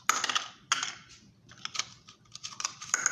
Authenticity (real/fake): real